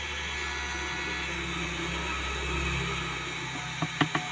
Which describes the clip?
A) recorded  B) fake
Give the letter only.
A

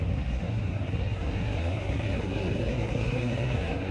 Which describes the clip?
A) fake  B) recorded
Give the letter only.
A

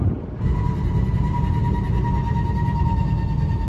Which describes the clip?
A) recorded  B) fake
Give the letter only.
A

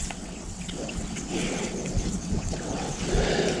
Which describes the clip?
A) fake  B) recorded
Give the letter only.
A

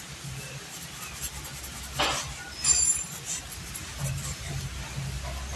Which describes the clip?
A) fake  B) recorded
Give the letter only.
B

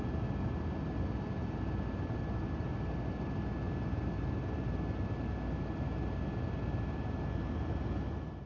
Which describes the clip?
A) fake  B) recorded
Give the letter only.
B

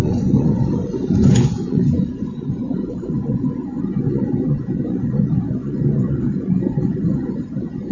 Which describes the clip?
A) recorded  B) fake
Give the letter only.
B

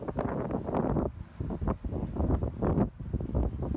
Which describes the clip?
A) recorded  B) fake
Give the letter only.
A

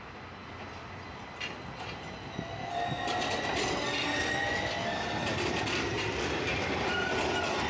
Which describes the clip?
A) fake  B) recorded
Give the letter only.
B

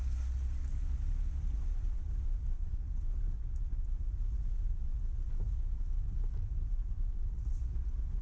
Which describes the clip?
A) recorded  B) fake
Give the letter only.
A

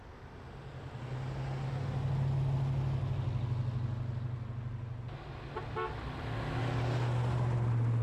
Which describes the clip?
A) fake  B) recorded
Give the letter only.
B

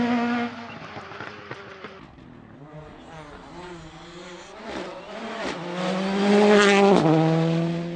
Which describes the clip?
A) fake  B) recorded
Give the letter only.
B